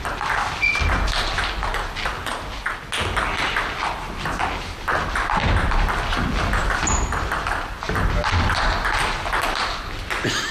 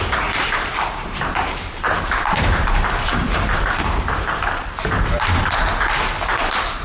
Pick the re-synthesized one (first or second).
second